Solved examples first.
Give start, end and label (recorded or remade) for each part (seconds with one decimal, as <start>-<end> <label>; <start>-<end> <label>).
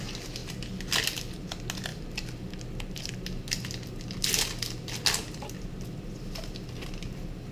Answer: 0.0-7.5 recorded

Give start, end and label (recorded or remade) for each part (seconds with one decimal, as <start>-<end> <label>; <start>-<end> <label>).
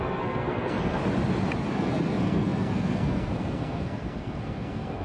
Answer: 0.0-1.0 remade; 1.0-1.7 recorded; 1.7-5.0 remade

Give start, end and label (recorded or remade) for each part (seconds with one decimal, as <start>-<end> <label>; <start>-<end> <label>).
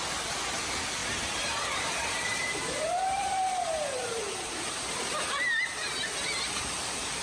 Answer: 0.0-1.0 recorded; 1.0-4.9 remade; 4.9-7.2 recorded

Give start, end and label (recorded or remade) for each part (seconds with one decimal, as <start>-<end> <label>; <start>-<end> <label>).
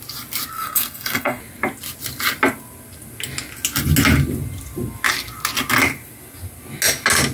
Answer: 0.0-0.5 recorded; 0.5-1.4 remade; 1.4-7.3 recorded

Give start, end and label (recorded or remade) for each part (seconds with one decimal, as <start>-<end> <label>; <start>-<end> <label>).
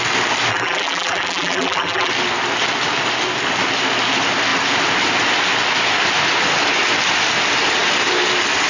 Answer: 0.0-0.5 recorded; 0.5-2.1 remade; 2.1-8.7 recorded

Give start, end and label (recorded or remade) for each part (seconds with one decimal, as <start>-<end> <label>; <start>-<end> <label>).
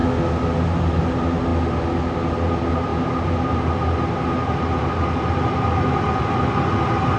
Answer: 0.0-7.2 recorded